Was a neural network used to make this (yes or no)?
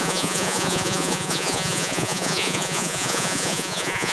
yes